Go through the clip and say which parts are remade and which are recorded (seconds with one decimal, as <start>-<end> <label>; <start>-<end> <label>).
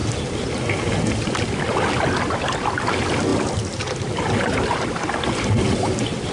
0.0-6.3 recorded